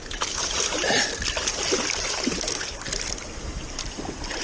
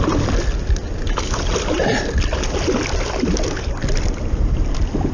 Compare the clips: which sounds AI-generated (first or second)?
first